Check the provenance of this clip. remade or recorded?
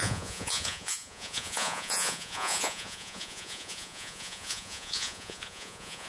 remade